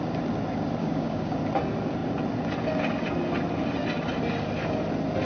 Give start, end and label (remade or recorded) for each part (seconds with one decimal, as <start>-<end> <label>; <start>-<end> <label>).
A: 0.0-0.8 recorded; 0.8-1.4 remade; 1.4-5.2 recorded

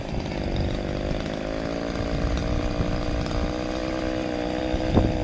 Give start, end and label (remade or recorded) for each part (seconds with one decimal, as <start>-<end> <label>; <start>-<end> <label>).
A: 0.0-5.2 recorded